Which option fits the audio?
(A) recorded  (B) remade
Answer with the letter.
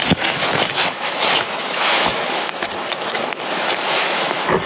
B